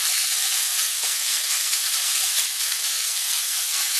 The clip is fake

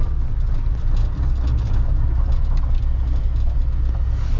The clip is real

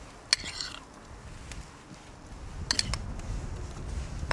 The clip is real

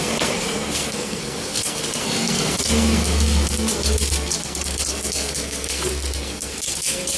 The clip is fake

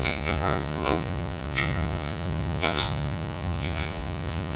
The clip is fake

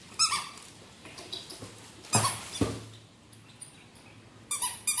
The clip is real